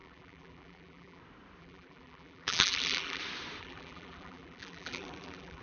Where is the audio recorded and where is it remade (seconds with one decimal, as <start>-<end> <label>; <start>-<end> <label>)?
0.0-1.2 remade; 1.2-1.6 recorded; 1.6-3.2 remade; 3.2-3.6 recorded; 3.6-5.6 remade

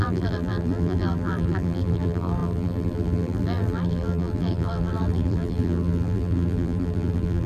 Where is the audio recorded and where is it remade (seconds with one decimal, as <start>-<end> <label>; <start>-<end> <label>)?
0.0-7.5 remade

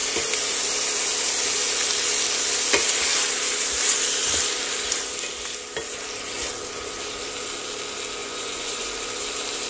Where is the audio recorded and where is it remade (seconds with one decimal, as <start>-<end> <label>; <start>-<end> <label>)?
0.0-8.2 recorded; 8.2-8.9 remade; 8.9-9.7 recorded

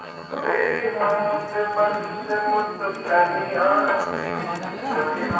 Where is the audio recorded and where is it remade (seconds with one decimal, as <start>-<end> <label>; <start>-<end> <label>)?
0.0-0.8 remade; 0.8-4.0 recorded; 4.0-4.4 remade; 4.4-5.4 recorded

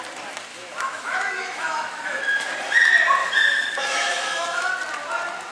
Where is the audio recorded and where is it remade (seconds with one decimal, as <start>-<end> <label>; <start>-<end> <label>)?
0.0-0.5 recorded; 0.5-2.2 remade; 2.2-3.2 recorded; 3.2-4.7 remade; 4.7-5.5 recorded